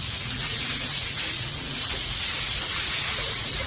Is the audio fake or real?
fake